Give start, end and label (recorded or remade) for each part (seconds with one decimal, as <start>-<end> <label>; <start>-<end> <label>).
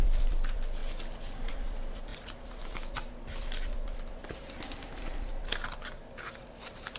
0.0-0.8 remade; 0.8-1.5 recorded; 1.5-7.0 remade